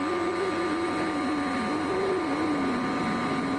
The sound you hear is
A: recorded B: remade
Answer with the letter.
A